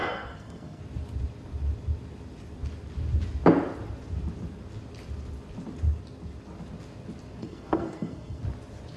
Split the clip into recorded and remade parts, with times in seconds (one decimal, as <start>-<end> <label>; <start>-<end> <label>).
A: 0.0-0.8 remade; 0.8-7.4 recorded; 7.4-8.4 remade; 8.4-9.0 recorded